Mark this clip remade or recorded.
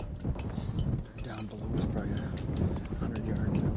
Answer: recorded